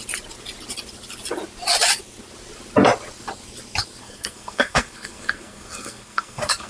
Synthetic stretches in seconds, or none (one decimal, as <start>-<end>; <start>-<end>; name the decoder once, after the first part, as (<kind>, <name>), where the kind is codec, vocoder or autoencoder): 4.0-6.7 (codec, SNAC)